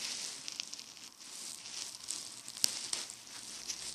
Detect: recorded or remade recorded